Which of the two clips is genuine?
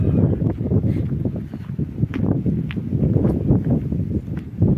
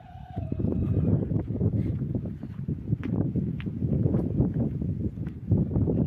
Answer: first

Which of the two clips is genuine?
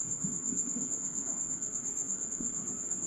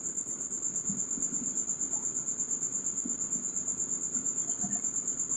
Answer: second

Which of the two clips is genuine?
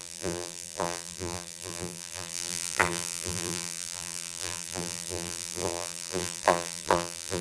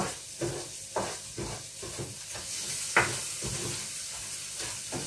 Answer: second